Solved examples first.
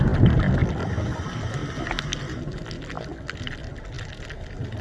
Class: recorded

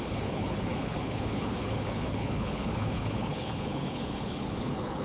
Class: remade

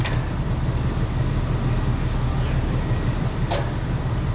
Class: recorded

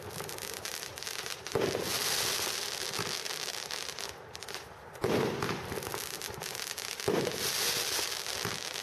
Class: recorded